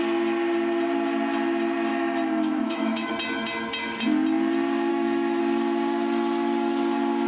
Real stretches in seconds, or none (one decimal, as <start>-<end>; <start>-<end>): 0.0-1.9; 3.1-4.9; 5.4-7.3